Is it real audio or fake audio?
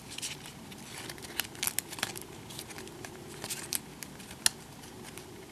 real